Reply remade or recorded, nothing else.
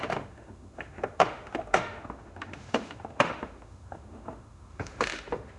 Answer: remade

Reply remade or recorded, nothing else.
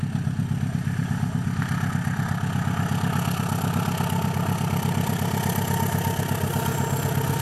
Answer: recorded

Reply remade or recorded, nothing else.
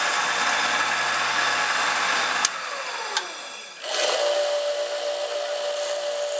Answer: recorded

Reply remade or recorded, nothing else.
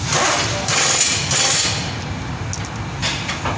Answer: recorded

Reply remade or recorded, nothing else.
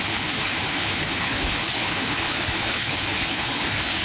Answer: remade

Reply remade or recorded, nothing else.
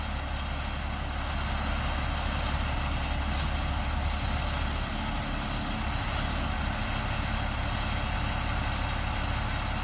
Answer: recorded